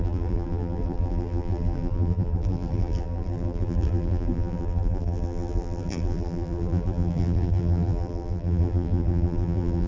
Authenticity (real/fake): fake